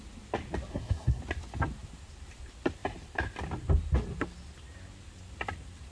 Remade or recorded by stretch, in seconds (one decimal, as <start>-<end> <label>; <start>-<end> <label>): 0.0-0.7 recorded; 0.7-1.2 remade; 1.2-5.9 recorded